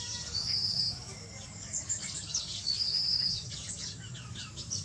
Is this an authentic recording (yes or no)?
no